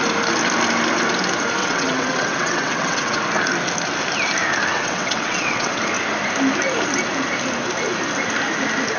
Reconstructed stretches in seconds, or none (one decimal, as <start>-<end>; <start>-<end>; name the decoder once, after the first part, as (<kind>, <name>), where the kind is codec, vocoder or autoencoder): 1.6-3.2 (vocoder, WaveNeXt); 4.7-5.8